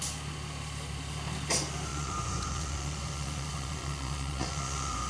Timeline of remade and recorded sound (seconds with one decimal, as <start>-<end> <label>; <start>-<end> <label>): 0.0-1.9 recorded; 1.9-5.1 remade